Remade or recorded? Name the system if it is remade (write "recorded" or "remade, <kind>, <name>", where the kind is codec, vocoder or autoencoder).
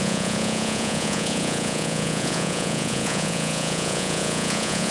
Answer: remade, vocoder, Vocos